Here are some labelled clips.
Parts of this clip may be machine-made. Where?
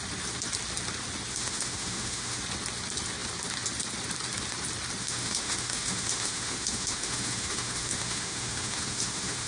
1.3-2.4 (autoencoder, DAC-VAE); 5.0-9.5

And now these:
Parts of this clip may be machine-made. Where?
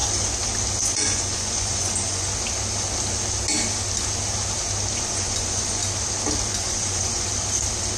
0.8-2.3 (vocoder, Vocos); 5.0-5.8; 6.5-7.3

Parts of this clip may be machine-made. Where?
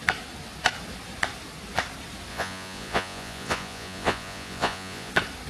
2.3-5.1 (vocoder, Vocos)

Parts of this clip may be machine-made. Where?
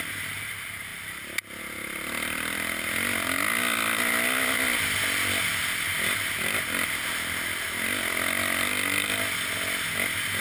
none